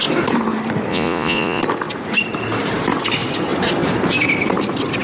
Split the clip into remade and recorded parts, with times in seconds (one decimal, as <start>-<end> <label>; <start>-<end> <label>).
0.0-0.9 recorded; 0.9-1.6 remade; 1.6-5.0 recorded